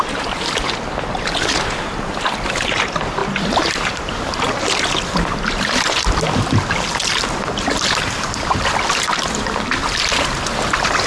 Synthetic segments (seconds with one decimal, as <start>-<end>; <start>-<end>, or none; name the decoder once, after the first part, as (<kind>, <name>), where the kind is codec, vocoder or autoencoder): none